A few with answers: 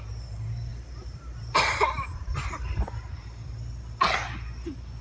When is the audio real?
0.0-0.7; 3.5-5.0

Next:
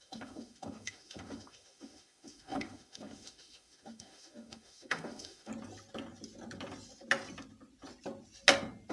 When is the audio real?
5.5-8.9

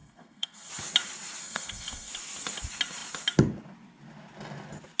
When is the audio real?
0.7-1.4; 2.1-5.0

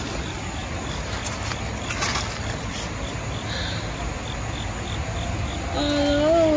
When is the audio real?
0.0-6.6

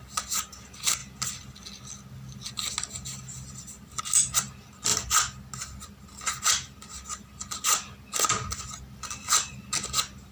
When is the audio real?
0.0-10.3

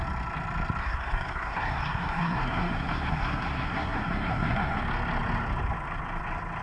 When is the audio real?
0.0-0.8; 4.8-6.6